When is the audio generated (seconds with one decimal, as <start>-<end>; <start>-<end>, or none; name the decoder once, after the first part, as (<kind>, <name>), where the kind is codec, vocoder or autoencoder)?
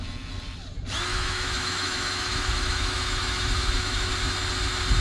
1.1-4.1 (autoencoder, DAC-VAE)